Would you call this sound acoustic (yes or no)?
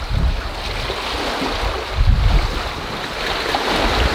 yes